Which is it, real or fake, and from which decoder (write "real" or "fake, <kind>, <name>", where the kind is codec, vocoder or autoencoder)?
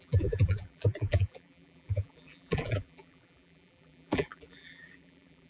fake, vocoder, BigVGAN v2